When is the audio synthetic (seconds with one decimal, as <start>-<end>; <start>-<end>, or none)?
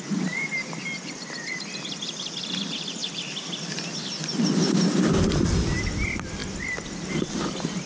none